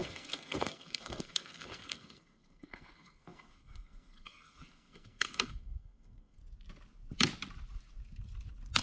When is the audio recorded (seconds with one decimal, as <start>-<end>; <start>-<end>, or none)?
6.4-8.8

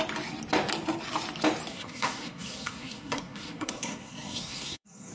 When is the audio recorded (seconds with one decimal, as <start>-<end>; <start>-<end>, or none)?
0.0-1.7

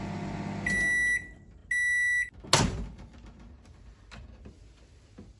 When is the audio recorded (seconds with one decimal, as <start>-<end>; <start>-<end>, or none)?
0.0-5.4

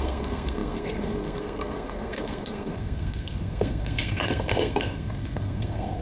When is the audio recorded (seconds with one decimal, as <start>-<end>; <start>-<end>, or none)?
none

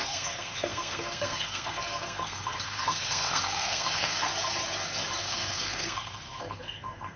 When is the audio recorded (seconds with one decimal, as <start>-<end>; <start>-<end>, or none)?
4.3-5.2